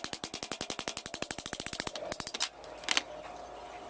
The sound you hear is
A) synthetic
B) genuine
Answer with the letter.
B